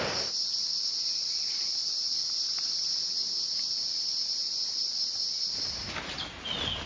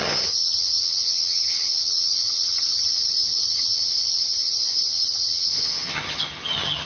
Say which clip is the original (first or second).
first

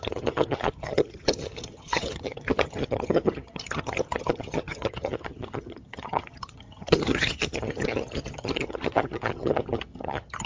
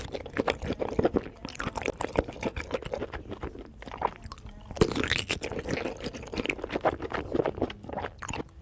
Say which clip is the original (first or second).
second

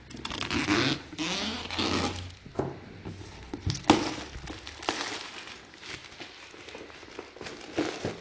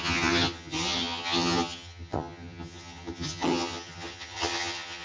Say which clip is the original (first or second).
first